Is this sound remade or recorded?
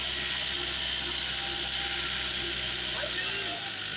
recorded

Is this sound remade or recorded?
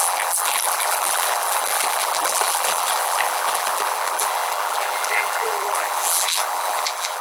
remade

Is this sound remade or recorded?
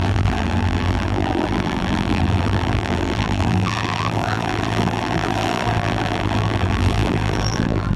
remade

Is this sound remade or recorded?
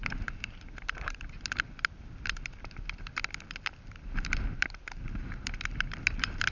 recorded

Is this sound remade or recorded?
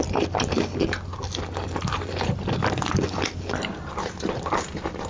recorded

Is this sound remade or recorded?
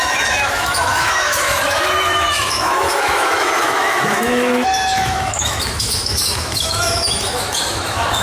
remade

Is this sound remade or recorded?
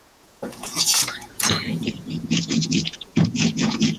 remade